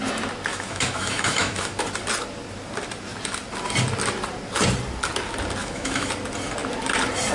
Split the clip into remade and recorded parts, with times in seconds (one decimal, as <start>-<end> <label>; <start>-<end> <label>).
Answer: 0.0-0.5 recorded; 0.5-1.8 remade; 1.8-5.6 recorded; 5.6-6.1 remade; 6.1-7.3 recorded